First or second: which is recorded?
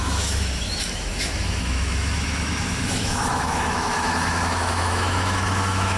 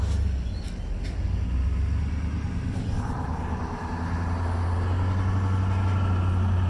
second